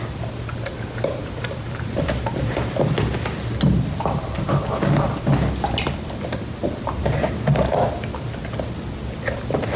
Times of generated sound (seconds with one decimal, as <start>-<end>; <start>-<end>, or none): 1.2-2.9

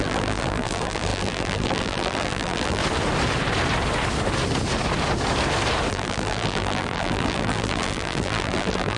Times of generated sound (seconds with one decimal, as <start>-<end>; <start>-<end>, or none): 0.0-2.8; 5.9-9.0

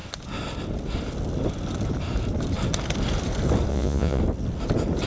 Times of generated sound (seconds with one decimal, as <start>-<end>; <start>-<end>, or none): 3.7-4.2

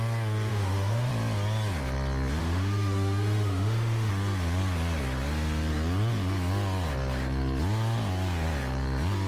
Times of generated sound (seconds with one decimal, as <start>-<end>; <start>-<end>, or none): 0.5-1.1; 2.4-4.1